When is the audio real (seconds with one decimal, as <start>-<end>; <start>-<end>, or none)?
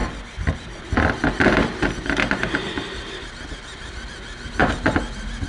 0.0-5.5